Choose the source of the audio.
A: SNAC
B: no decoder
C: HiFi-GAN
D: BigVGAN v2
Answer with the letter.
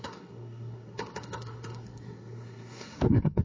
A